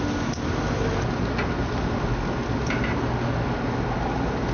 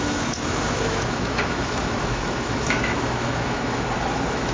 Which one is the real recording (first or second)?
first